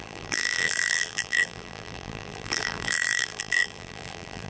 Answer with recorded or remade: remade